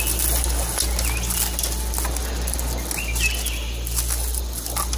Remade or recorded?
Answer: recorded